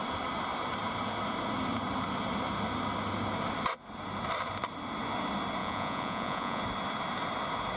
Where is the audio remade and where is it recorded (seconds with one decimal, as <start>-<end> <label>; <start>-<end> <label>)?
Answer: 0.0-5.6 recorded; 5.6-6.6 remade; 6.6-7.8 recorded